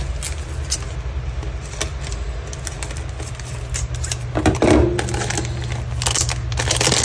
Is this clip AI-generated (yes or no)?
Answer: no